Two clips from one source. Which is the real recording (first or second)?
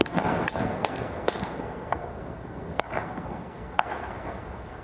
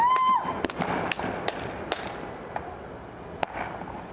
second